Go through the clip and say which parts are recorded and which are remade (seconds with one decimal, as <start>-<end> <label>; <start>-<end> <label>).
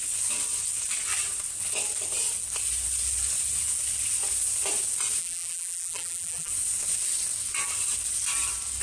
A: 0.0-5.2 recorded; 5.2-6.5 remade; 6.5-8.8 recorded